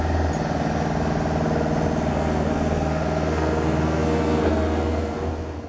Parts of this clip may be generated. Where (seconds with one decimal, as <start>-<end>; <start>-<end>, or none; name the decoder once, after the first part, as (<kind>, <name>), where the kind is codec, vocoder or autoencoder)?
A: 2.1-5.7 (codec, SNAC)